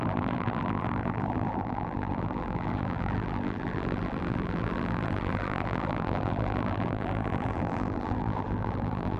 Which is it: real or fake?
fake